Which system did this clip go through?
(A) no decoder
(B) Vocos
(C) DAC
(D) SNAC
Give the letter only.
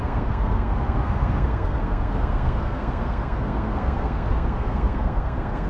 D